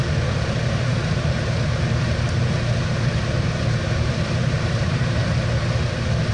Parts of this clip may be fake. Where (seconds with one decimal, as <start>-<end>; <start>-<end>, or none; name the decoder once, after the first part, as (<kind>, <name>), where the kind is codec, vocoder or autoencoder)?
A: 0.0-5.2 (vocoder, BigVGAN v2)